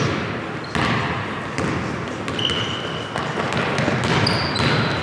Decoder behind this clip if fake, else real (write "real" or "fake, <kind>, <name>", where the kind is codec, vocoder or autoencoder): real